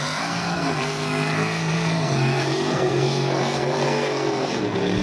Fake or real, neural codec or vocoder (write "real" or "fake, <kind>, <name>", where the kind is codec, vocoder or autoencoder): fake, codec, SNAC